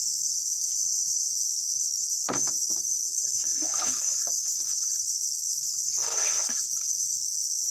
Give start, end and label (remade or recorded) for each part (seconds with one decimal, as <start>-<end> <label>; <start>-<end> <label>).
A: 0.0-0.7 remade; 0.7-1.3 recorded; 1.3-7.7 remade